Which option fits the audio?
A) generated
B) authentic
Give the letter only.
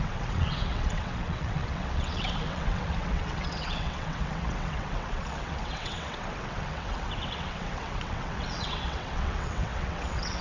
A